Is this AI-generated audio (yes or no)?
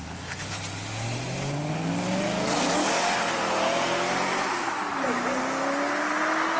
no